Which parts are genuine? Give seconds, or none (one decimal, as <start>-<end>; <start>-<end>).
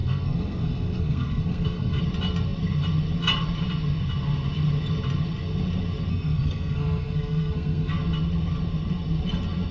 2.0-6.1; 7.9-9.7